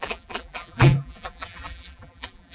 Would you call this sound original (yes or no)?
no